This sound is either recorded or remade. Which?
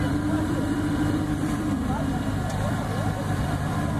remade